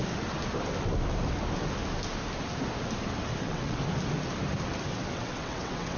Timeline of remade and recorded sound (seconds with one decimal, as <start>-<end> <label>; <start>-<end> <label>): 0.0-3.4 recorded; 3.4-3.8 remade; 3.8-5.1 recorded; 5.1-6.0 remade